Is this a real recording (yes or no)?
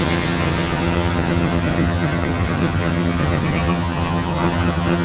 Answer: no